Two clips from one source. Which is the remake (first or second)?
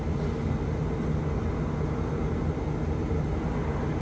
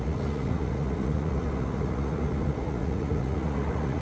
second